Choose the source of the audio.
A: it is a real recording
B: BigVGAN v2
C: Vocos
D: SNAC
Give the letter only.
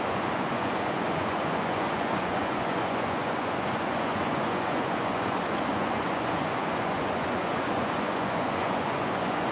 C